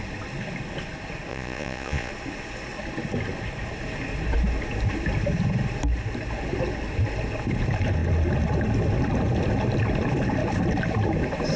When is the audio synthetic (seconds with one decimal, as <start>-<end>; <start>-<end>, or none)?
1.3-2.1